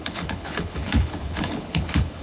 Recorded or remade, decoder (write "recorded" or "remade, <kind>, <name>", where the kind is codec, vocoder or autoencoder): remade, codec, HILCodec